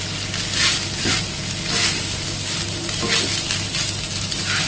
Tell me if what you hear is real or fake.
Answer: real